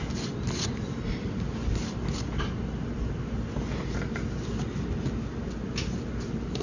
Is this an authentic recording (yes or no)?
yes